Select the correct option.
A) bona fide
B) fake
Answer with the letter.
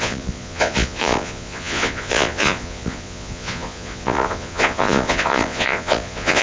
B